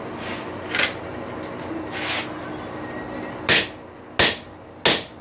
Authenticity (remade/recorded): recorded